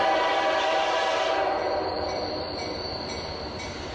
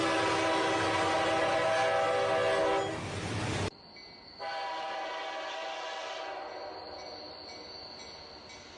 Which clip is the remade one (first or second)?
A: first